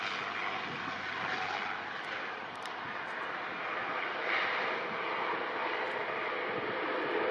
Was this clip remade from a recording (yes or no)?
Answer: no